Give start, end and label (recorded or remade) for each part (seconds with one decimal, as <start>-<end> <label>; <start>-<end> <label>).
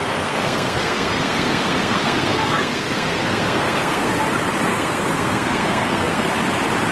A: 0.0-4.1 remade; 4.1-4.7 recorded; 4.7-6.3 remade; 6.3-6.9 recorded